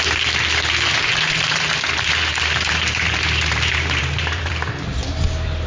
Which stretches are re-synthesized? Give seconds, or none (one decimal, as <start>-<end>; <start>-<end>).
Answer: 1.1-4.5